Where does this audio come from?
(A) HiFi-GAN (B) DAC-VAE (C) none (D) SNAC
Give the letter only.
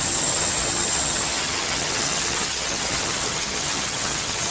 A